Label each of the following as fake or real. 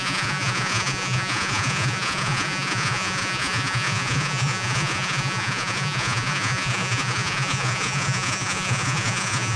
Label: fake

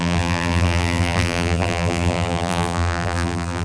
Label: fake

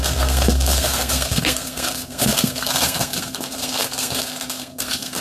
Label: fake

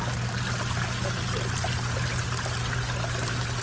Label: real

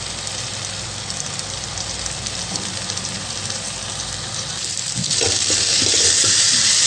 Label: fake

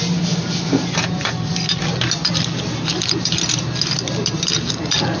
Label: real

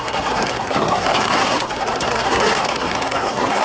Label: fake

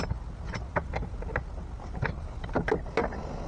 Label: real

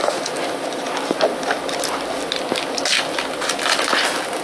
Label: real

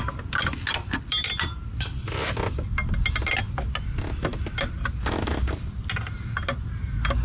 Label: real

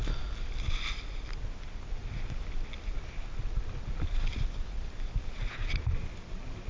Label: real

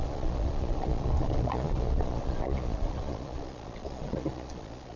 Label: fake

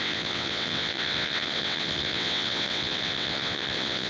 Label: fake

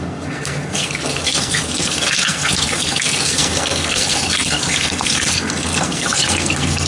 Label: fake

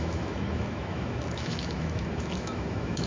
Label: fake